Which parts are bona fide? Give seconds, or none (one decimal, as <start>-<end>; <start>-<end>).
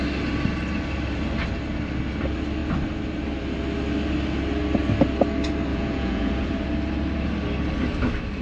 0.0-5.7; 6.5-8.4